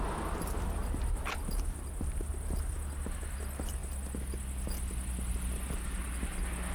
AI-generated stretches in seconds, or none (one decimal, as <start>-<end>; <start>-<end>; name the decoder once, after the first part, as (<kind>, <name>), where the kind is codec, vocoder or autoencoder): none